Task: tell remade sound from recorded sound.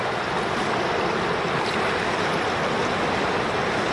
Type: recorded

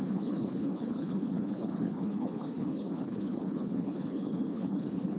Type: remade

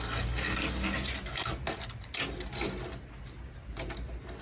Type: recorded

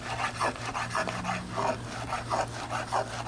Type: recorded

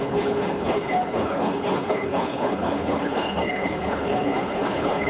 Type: remade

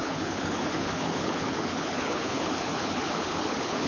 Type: remade